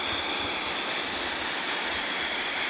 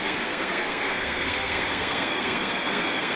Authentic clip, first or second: first